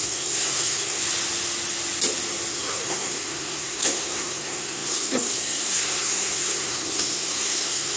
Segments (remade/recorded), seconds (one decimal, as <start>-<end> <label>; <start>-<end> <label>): 0.0-1.0 remade; 1.0-2.5 recorded; 2.5-8.0 remade